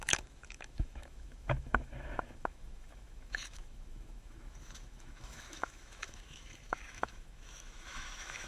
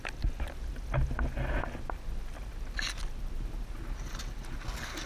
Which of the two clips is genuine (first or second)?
second